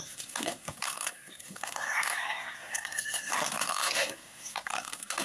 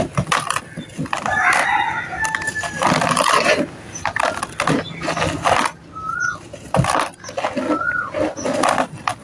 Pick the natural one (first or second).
second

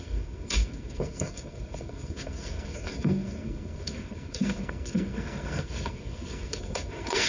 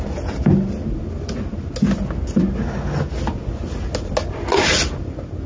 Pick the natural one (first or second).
second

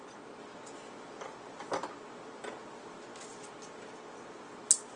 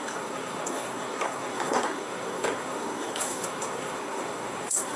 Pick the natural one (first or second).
first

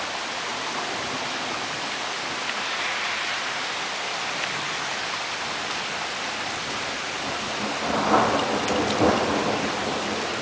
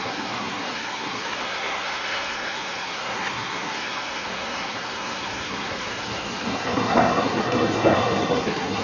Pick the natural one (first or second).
first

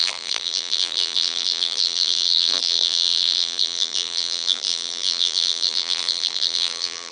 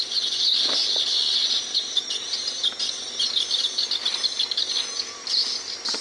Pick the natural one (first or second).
second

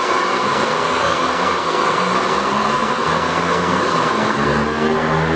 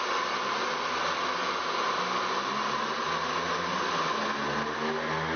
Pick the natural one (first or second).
second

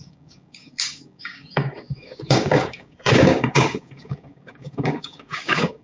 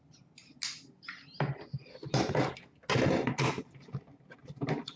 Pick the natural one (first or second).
second